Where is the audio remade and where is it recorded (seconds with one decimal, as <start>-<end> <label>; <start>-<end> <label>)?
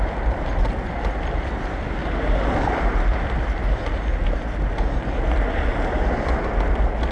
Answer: 0.0-7.1 recorded